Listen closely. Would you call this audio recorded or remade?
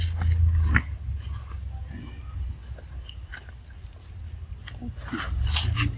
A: recorded